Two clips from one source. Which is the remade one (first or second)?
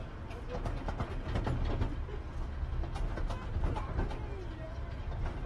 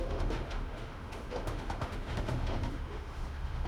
second